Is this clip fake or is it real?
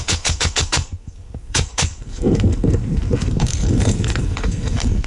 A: fake